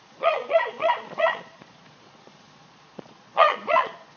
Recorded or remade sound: remade